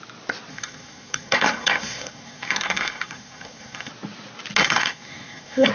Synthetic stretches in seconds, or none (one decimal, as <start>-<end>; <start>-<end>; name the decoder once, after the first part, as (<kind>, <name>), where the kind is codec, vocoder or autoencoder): 0.5-3.9 (codec, SNAC); 4.6-5.7